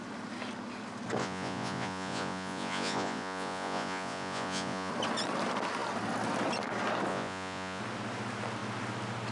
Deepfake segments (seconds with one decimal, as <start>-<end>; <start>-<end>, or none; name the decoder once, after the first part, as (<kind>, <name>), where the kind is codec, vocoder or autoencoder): 1.2-4.9 (vocoder, Vocos); 7.1-7.8